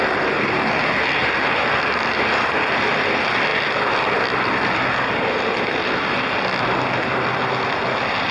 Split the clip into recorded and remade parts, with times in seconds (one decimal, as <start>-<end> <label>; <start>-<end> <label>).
0.0-8.3 recorded